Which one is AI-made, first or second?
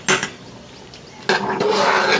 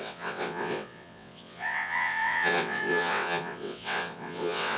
second